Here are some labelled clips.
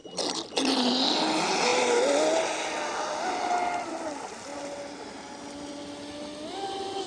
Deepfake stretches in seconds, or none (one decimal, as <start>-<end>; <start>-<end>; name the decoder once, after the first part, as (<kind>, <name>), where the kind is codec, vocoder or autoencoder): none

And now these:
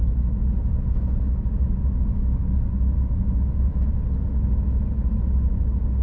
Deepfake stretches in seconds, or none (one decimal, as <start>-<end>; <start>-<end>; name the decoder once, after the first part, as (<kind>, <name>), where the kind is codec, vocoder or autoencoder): none

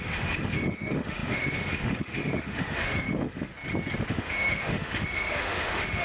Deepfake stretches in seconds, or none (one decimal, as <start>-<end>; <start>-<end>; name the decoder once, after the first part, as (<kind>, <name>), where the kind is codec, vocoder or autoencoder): 0.0-3.5 (autoencoder, DAC-VAE); 4.1-6.0

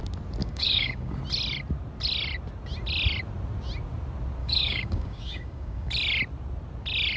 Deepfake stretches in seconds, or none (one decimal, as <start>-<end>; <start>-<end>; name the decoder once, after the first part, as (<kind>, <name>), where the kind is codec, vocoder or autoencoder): 0.4-1.2 (codec, DAC); 4.4-5.9

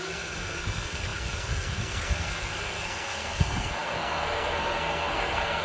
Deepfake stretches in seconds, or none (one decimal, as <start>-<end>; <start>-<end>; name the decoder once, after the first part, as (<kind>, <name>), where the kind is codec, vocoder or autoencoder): 0.0-5.6 (codec, SNAC)